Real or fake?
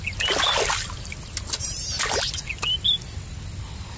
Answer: real